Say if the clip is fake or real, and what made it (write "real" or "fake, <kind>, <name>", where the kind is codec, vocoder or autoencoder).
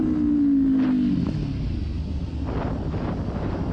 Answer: real